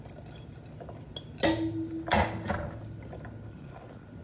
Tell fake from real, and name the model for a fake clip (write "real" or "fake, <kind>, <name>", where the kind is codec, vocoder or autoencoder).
real